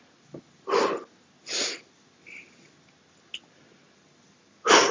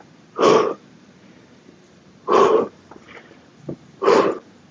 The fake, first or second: second